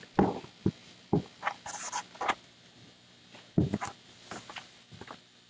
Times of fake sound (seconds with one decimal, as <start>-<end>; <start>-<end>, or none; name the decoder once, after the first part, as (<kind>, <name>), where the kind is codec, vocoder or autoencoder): none

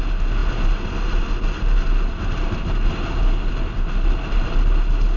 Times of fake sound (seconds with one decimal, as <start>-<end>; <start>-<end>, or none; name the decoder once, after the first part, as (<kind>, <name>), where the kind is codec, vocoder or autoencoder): none

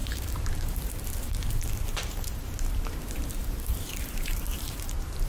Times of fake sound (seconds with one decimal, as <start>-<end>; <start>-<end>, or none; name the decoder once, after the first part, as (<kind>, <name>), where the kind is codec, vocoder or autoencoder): 0.0-5.3 (vocoder, BigVGAN v2)

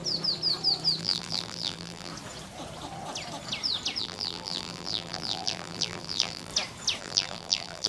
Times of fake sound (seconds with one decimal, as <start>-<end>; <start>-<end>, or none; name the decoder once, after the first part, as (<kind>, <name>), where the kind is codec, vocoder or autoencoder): 1.0-2.1 (vocoder, BigVGAN v2); 4.0-6.5; 7.0-7.9